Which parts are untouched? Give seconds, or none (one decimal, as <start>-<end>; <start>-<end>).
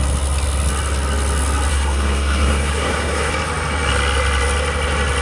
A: 0.0-1.7; 3.3-5.2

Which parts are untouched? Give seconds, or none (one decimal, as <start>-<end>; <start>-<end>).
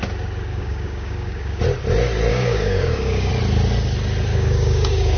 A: 0.0-0.5; 1.6-2.3; 3.3-4.3